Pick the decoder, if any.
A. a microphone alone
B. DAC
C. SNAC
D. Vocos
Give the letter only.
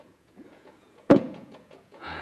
D